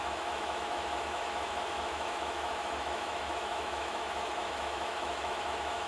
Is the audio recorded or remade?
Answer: remade